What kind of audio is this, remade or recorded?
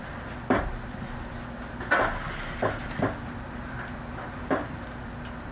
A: recorded